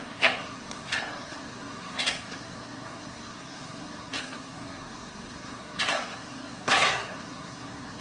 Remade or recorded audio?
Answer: remade